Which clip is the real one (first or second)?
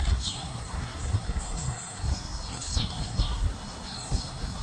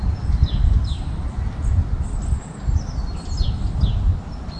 second